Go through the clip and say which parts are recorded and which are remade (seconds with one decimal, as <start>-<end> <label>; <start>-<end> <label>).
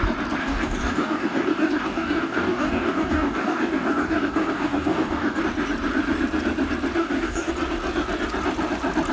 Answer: 0.0-0.4 recorded; 0.4-5.4 remade; 5.4-7.0 recorded; 7.0-7.5 remade; 7.5-9.1 recorded